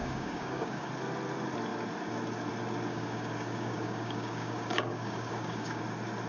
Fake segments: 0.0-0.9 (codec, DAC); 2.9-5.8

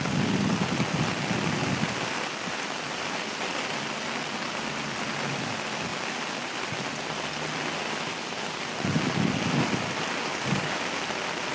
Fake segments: 10.3-10.8 (codec, DAC)

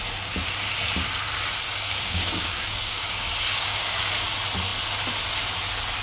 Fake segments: 1.7-4.1 (codec, DAC)

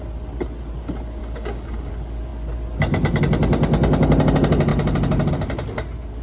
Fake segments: 1.2-1.9 (codec, DAC)

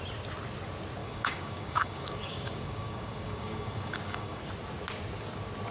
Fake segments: 1.0-4.4 (codec, DAC)

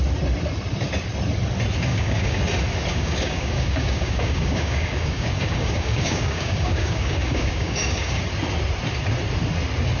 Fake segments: 1.9-2.4 (codec, DAC); 2.9-8.2

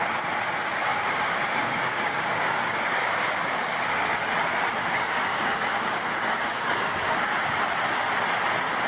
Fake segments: 0.9-4.1 (codec, DAC); 4.8-7.6